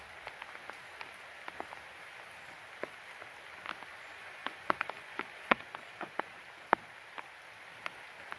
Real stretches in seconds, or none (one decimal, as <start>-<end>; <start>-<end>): 0.0-3.9; 6.4-8.4

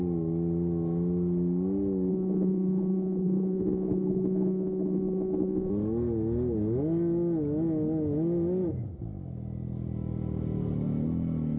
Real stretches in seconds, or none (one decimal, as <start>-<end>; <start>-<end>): 0.0-2.1; 5.7-11.6

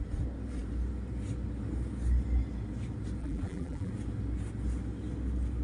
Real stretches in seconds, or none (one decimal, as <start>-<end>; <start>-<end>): 0.0-3.2; 3.9-5.6

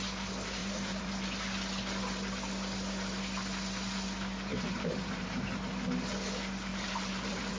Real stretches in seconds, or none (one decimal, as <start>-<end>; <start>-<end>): 0.0-0.6; 1.1-4.5; 5.6-6.7

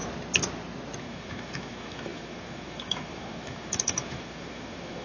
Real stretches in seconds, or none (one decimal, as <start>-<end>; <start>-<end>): 0.0-1.0

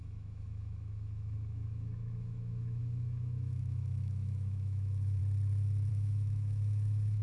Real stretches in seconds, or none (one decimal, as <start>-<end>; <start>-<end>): 5.2-5.9